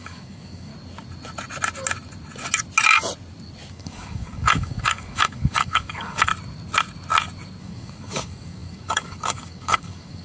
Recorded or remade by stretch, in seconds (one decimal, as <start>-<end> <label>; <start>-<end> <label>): 0.0-0.7 remade; 0.7-3.7 recorded; 3.7-6.3 remade; 6.3-7.6 recorded; 7.6-10.2 remade